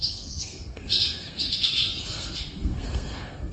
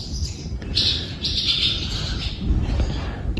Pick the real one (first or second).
second